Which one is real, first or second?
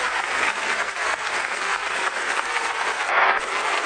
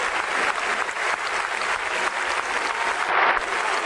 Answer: second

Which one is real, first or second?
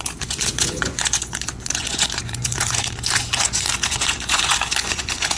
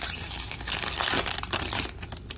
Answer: second